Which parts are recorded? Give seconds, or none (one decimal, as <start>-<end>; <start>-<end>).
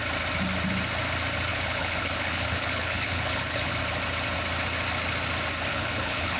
0.0-1.5; 3.8-5.7